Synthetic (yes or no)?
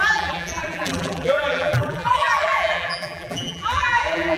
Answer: yes